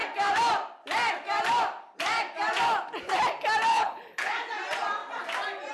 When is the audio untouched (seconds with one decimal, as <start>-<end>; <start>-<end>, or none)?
0.0-3.7; 4.3-5.7